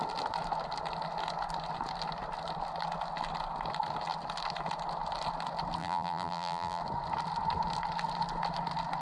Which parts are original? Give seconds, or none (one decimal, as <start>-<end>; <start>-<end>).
0.0-5.8; 6.8-9.0